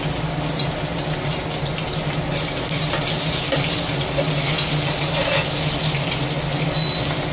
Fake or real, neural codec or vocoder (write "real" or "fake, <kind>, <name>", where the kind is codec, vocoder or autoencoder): real